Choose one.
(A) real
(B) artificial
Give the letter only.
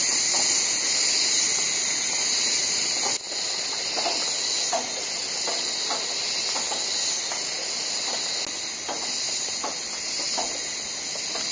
A